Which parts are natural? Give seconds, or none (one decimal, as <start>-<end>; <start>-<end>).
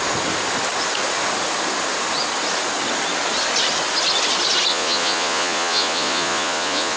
0.0-4.7